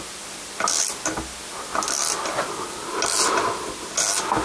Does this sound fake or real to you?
real